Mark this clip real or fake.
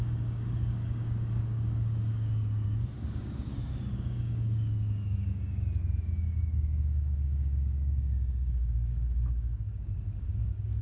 fake